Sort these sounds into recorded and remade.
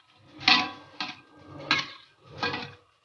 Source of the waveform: recorded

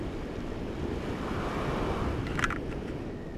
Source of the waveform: recorded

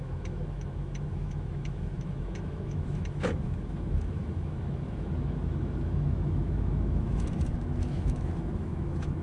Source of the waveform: remade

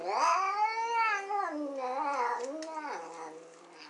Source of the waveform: recorded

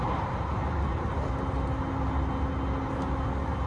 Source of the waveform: recorded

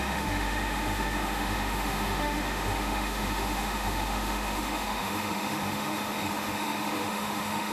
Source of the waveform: remade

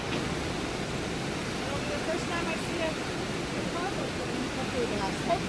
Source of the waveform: recorded